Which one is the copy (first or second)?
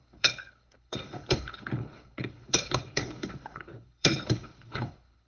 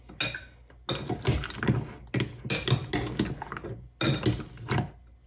first